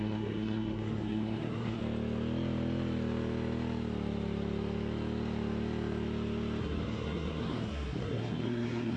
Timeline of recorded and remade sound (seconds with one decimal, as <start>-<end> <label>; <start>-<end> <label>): 0.0-1.8 remade; 1.8-6.6 recorded; 6.6-9.0 remade